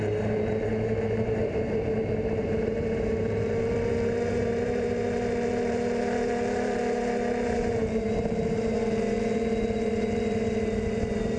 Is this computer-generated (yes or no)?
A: yes